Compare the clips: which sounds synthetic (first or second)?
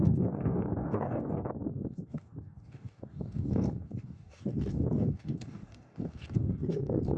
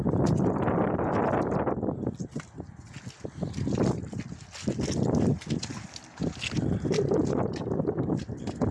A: first